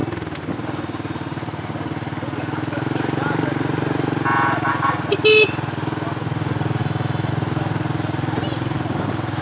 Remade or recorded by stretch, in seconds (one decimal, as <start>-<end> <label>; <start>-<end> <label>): 0.0-6.8 recorded; 6.8-7.3 remade; 7.3-9.4 recorded